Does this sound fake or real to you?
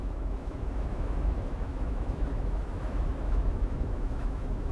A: fake